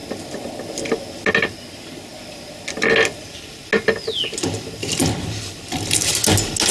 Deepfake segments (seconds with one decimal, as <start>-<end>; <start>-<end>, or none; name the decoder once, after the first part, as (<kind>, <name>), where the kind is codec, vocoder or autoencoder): none